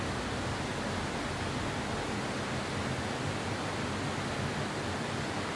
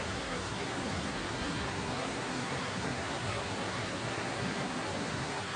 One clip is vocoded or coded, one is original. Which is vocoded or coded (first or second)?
second